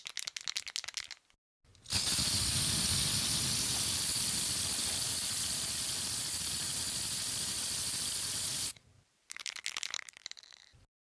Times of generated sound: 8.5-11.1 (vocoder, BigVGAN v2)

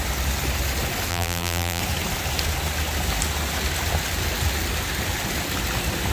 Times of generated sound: 1.1-1.8 (vocoder, BigVGAN v2)